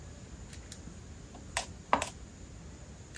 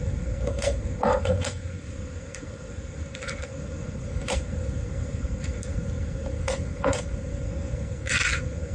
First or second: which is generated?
second